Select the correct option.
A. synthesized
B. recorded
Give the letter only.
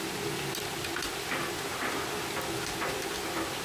B